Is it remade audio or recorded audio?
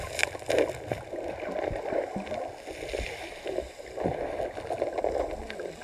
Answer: recorded